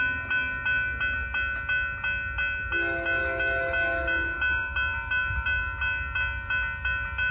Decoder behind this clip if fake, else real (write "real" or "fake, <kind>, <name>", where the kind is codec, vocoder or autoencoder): real